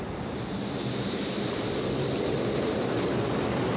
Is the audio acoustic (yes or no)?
yes